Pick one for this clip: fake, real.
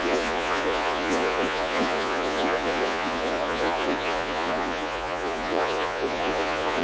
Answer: fake